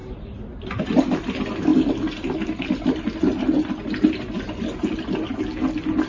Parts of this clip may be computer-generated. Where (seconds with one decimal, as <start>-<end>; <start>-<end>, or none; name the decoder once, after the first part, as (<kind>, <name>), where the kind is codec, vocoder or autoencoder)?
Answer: none